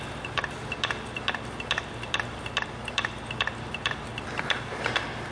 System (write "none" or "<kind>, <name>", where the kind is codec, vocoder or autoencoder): none